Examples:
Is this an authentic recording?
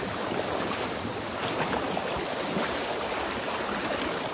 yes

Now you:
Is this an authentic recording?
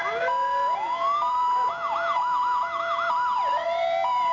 yes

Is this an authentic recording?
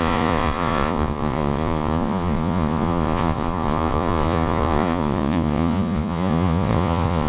no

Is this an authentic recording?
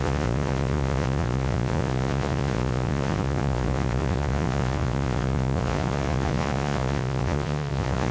no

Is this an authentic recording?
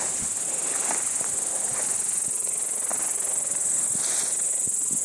yes